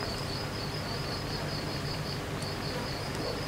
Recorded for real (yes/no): no